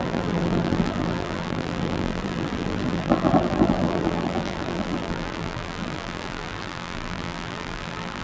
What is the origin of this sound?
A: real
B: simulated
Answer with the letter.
B